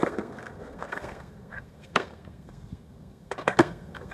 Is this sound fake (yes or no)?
yes